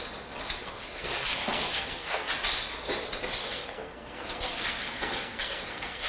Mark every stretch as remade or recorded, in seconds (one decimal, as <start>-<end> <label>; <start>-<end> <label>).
0.0-0.6 recorded; 0.6-2.3 remade; 2.3-3.4 recorded; 3.4-6.1 remade